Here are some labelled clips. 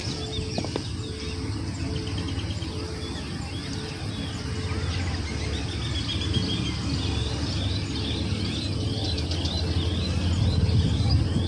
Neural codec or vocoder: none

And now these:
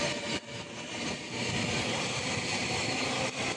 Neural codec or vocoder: none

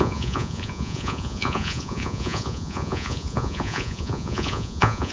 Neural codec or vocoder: vocoder, Vocos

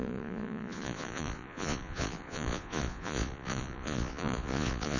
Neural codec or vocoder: vocoder, Vocos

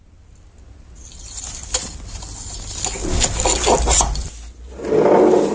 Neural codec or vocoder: none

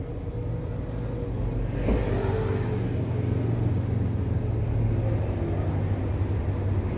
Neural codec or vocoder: none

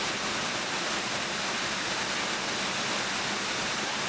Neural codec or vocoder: none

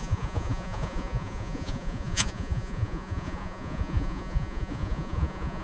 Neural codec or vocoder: vocoder, Vocos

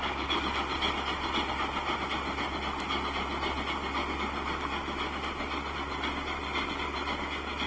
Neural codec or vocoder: none